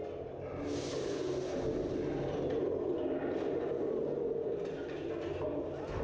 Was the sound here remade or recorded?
recorded